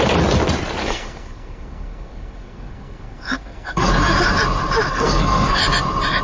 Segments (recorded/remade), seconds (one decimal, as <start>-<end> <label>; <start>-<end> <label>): 0.0-0.8 recorded; 0.8-3.9 remade; 3.9-4.9 recorded; 4.9-5.6 remade; 5.6-6.2 recorded